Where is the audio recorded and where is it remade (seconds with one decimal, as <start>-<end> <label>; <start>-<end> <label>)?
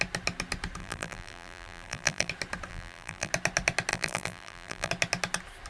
0.0-0.8 recorded; 0.8-2.3 remade; 2.3-2.7 recorded; 2.7-3.3 remade; 3.3-3.9 recorded; 3.9-4.9 remade; 4.9-5.7 recorded